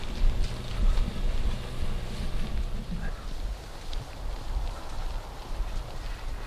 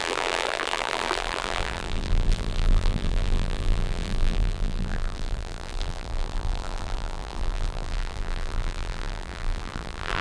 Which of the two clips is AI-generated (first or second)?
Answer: second